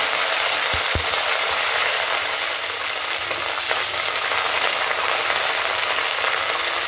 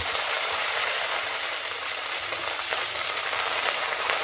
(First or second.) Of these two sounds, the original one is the first